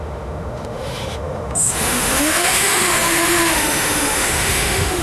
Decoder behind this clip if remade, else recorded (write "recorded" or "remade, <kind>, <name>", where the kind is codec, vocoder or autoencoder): remade, autoencoder, DAC-VAE